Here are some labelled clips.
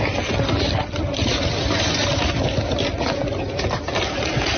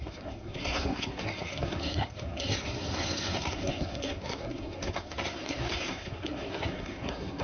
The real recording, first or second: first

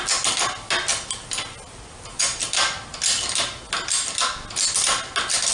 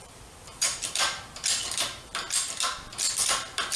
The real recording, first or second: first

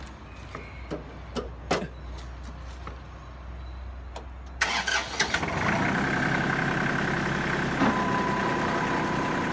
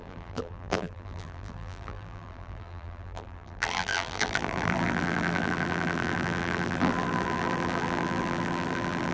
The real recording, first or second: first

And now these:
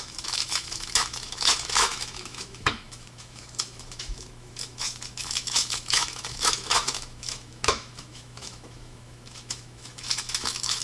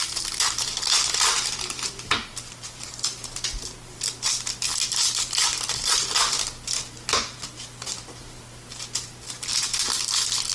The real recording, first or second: second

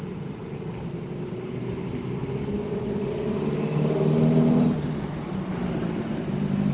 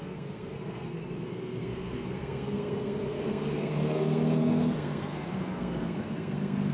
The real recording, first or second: first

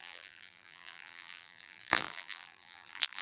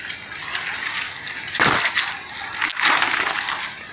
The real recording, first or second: second